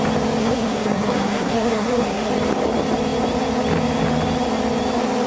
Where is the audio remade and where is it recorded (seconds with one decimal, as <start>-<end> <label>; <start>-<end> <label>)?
0.0-0.4 recorded; 0.4-2.3 remade; 2.3-5.3 recorded